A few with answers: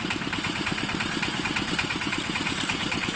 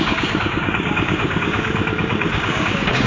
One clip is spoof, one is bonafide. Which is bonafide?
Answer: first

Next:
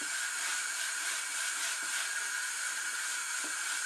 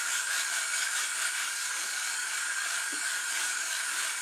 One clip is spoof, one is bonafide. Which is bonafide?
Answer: first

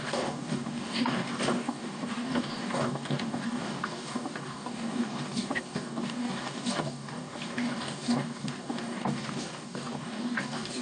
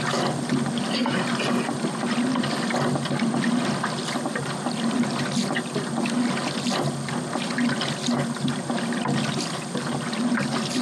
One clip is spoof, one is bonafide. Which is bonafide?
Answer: second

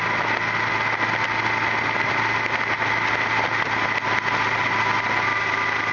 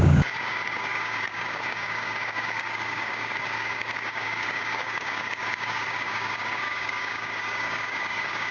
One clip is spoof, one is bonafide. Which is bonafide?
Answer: first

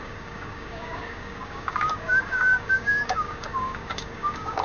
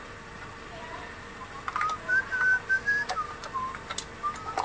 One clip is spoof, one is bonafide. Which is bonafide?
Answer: second